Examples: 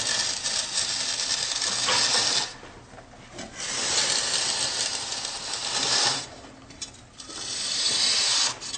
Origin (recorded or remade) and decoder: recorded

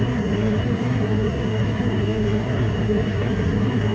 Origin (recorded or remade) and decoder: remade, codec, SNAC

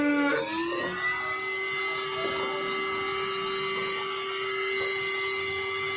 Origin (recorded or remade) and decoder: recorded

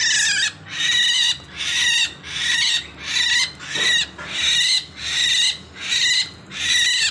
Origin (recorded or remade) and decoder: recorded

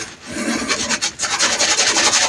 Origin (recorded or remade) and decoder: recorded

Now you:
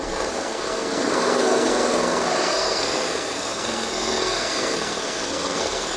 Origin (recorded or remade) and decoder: remade, codec, SNAC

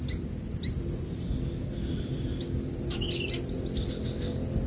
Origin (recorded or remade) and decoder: recorded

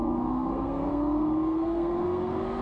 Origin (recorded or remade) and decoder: remade, codec, SNAC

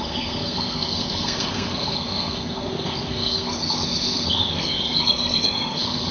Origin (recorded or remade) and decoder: remade, codec, SNAC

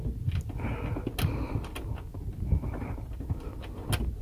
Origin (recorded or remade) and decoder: recorded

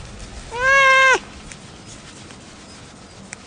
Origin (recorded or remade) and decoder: recorded